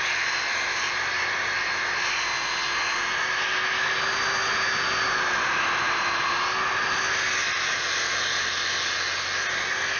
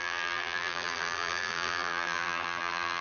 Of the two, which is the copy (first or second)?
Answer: second